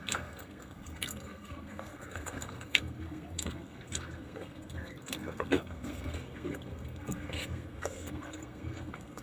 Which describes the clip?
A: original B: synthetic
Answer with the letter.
B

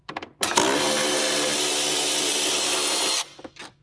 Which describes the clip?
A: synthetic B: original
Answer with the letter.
B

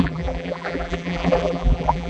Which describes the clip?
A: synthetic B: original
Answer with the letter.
A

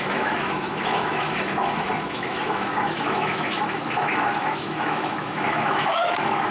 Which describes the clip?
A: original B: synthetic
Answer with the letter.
B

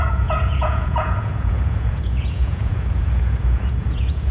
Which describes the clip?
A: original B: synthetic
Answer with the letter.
B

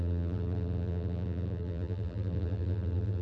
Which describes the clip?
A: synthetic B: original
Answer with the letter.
A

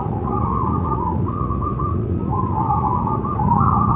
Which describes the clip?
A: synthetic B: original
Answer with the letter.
A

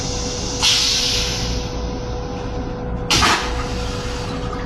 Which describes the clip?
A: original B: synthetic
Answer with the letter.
A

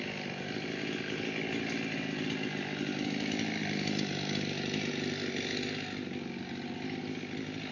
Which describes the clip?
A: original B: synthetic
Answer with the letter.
A